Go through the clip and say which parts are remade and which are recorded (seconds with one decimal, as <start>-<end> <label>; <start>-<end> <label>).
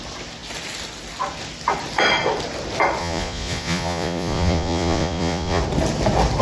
0.0-3.0 recorded; 3.0-5.6 remade; 5.6-6.4 recorded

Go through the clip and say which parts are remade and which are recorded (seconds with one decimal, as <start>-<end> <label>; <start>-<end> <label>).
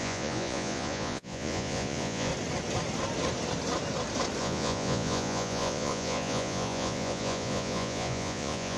0.0-2.3 remade; 2.3-4.4 recorded; 4.4-8.8 remade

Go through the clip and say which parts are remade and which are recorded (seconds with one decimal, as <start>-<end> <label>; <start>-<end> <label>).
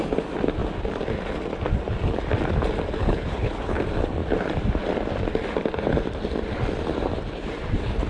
0.0-3.0 recorded; 3.0-3.8 remade; 3.8-8.1 recorded